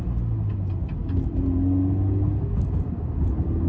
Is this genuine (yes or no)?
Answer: yes